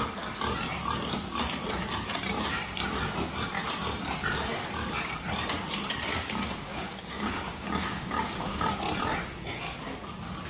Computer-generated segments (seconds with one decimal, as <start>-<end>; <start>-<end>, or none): 6.1-8.7